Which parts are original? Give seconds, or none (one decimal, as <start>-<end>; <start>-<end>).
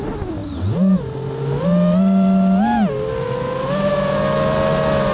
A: 0.0-5.1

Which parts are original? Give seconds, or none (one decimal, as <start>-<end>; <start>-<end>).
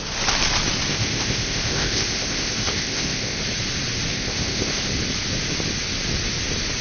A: 0.0-0.9; 3.4-4.1; 4.9-6.8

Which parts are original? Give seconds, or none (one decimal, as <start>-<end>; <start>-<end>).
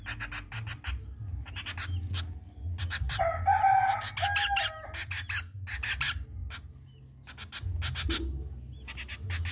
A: 0.0-9.5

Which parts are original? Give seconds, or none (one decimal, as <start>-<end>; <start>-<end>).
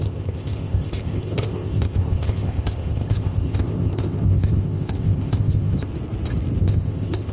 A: 5.9-6.6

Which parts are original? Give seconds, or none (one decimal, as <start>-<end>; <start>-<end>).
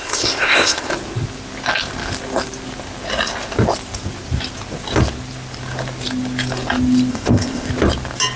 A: 0.9-7.1; 7.7-8.4